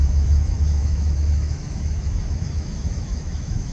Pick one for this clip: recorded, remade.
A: remade